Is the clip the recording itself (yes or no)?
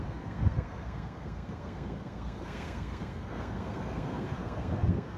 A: no